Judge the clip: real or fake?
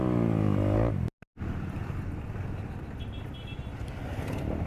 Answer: real